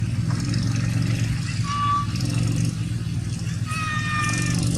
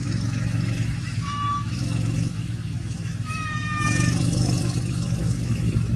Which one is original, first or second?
first